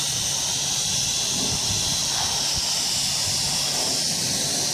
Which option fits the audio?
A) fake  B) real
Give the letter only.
B